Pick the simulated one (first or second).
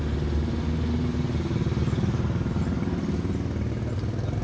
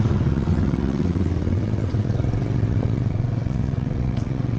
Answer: second